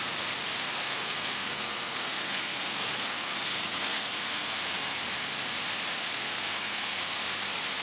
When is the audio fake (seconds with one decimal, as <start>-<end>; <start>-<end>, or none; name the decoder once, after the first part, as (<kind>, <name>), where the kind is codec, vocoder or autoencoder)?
0.7-5.0 (codec, SNAC); 6.0-7.2